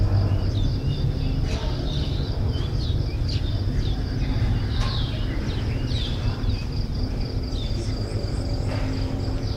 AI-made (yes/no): no